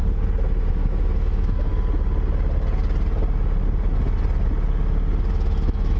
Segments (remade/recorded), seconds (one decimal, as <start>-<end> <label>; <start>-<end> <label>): 0.0-0.7 recorded; 0.7-1.7 remade; 1.7-5.3 recorded; 5.3-6.0 remade